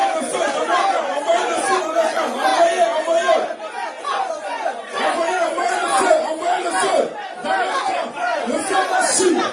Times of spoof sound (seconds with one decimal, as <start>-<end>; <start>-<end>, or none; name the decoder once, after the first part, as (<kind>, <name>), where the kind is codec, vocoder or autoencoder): 1.8-2.5 (vocoder, Vocos); 4.0-5.9; 8.1-9.5